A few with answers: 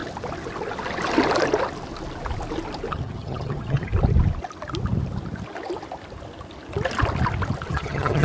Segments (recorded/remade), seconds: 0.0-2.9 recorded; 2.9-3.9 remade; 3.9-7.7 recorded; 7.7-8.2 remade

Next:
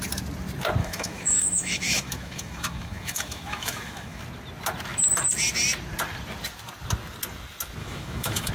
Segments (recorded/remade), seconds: 0.0-0.8 recorded; 0.8-4.2 remade; 4.2-7.8 recorded; 7.8-8.5 remade

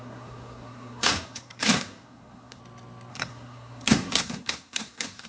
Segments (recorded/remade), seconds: 0.0-2.6 remade; 2.6-3.1 recorded; 3.1-5.3 remade